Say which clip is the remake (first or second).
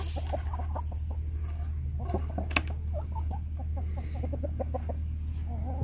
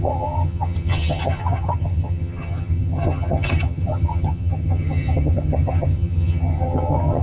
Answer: second